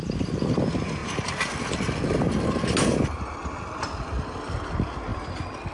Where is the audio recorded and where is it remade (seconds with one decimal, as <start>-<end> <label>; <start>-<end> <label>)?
0.0-5.7 recorded